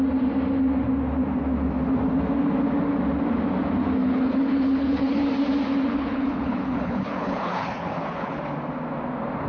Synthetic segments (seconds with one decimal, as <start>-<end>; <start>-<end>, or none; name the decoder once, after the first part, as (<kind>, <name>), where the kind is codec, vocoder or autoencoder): 4.0-5.3 (codec, HILCodec); 5.9-8.5